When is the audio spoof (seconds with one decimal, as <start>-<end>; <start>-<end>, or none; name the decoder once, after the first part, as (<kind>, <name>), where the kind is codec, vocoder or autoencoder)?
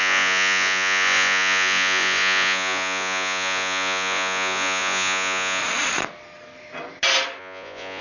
0.0-5.6 (vocoder, Vocos); 7.4-8.0